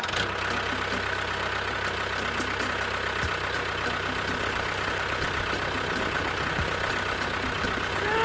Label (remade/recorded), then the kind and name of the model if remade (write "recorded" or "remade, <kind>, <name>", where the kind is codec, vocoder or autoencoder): recorded